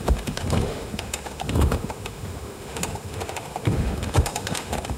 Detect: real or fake fake